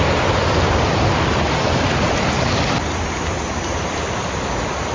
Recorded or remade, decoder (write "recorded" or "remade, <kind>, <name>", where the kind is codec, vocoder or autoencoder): recorded